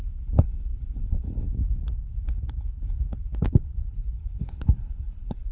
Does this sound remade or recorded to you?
remade